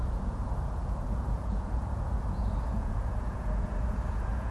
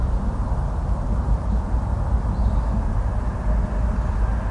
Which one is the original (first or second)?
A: second